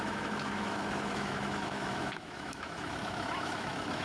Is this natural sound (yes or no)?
no